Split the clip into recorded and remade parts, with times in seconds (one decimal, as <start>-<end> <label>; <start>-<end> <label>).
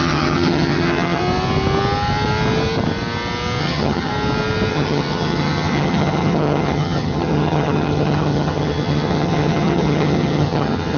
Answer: 0.0-1.2 remade; 1.2-3.6 recorded; 3.6-4.1 remade; 4.1-4.7 recorded; 4.7-11.0 remade